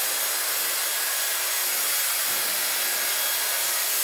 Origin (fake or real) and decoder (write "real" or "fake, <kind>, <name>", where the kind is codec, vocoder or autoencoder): real